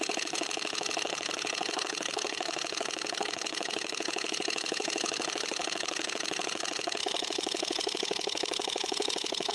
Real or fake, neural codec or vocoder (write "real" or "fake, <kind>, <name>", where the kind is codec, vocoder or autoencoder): fake, codec, HILCodec